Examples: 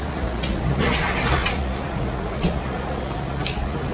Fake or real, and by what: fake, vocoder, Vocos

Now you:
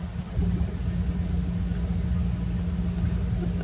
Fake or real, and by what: real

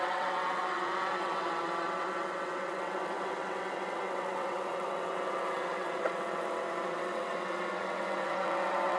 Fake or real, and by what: fake, vocoder, WaveNeXt